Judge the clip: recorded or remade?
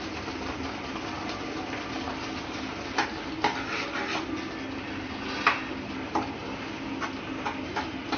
recorded